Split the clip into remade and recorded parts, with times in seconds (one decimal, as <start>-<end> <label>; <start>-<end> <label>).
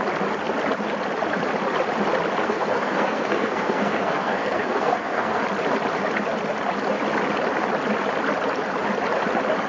0.0-2.4 recorded; 2.4-5.4 remade; 5.4-9.7 recorded